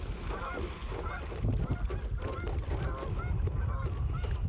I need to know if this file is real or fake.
real